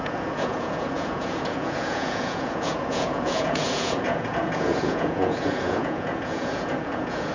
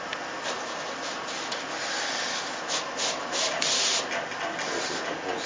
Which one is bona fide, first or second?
second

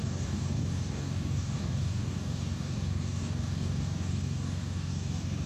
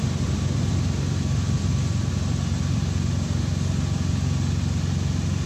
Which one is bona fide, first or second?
second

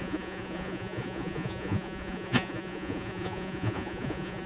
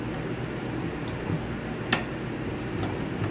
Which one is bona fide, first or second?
second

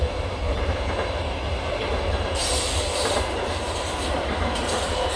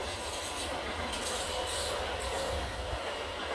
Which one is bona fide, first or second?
second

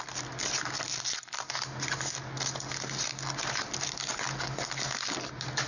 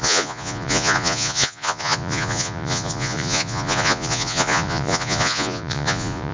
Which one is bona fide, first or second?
first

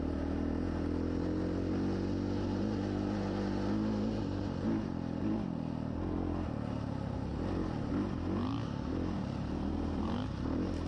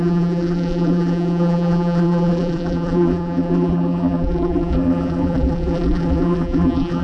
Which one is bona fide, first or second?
first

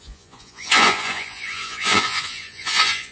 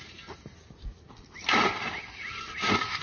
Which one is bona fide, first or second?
second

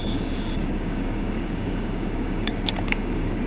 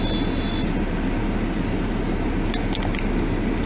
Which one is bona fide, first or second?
second